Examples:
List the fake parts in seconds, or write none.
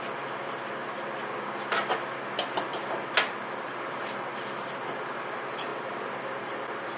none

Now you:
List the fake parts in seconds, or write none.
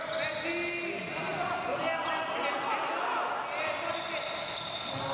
none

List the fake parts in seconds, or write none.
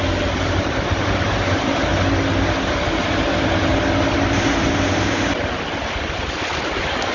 0.0-1.9; 2.7-3.7; 6.0-7.1